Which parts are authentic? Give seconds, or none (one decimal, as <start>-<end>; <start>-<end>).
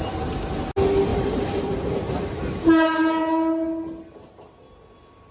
0.0-1.1; 2.4-5.3